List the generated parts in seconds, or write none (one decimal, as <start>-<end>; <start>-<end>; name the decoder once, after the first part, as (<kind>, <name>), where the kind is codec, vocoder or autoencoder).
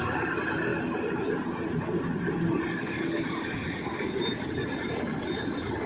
none